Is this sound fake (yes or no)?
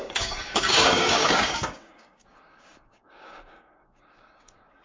yes